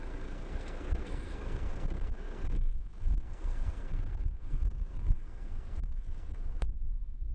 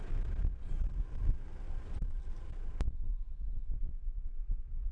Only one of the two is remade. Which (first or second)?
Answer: first